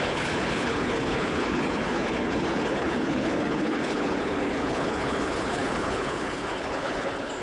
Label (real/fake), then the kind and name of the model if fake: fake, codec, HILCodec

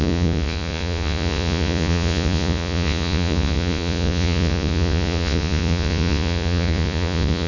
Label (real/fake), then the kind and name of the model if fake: fake, vocoder, Vocos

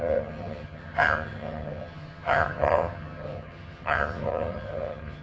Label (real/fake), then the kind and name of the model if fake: fake, vocoder, HiFi-GAN